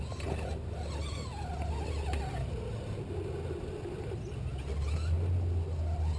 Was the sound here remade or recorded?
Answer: recorded